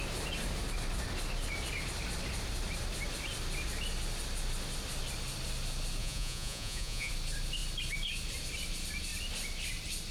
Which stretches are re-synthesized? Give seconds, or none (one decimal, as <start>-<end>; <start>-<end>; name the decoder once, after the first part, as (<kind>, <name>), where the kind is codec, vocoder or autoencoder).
6.0-7.1 (vocoder, Vocos)